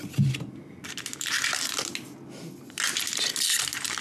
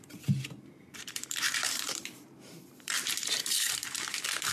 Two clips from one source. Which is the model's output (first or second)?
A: second